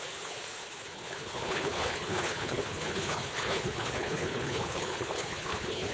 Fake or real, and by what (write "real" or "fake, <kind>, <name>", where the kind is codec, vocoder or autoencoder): fake, codec, HILCodec